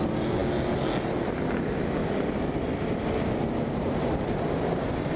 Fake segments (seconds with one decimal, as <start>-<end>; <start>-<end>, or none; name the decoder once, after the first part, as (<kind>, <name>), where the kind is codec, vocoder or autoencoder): none